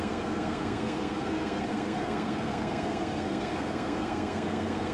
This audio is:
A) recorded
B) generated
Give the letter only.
B